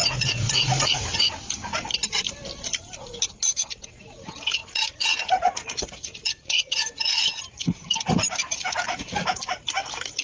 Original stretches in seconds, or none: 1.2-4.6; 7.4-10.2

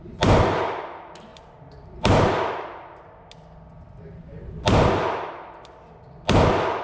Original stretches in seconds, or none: 0.0-1.3; 2.3-6.8